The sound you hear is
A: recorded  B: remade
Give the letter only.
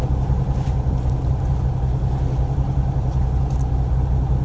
A